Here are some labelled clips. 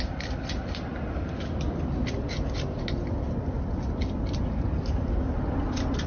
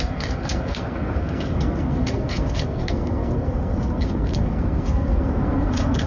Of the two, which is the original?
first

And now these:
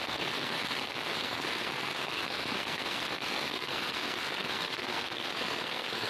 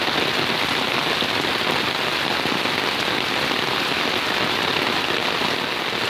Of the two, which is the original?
second